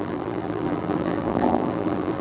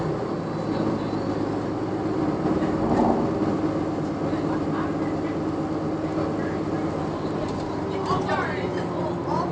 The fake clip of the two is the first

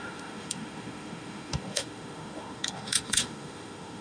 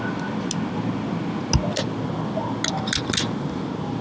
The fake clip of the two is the first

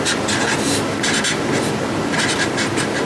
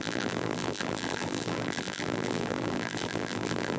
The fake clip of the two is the second